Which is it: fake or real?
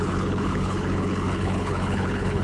fake